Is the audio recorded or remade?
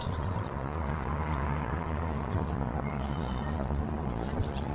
remade